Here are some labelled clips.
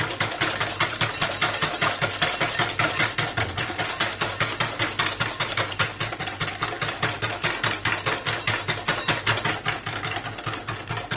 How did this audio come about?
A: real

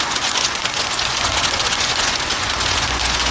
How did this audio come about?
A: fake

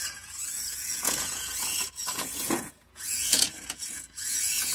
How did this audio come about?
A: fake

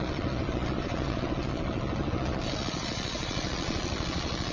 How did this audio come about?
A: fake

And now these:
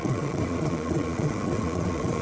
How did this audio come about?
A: fake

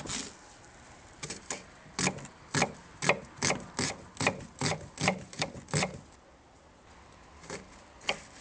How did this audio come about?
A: real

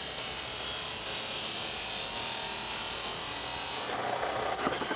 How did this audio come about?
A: real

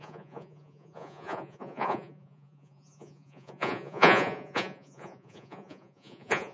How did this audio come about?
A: fake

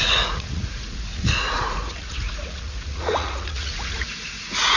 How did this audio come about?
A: fake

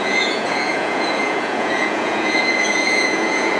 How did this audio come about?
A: fake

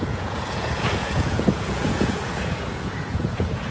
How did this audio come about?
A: fake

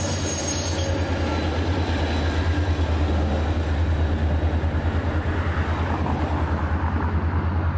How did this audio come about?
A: real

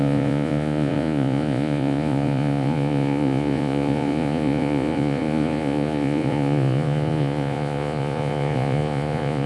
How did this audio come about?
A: fake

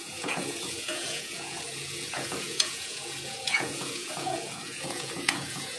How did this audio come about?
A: fake